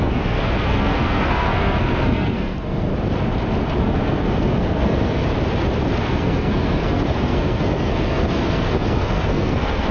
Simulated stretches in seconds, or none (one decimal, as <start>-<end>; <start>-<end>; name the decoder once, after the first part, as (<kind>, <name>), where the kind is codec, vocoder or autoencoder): 0.0-2.9 (codec, SNAC); 3.8-5.2; 6.0-9.9